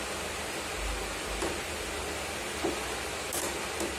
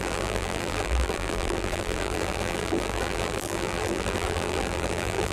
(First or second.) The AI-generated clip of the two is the second